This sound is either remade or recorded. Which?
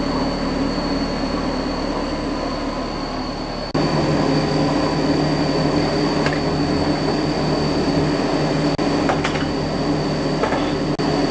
recorded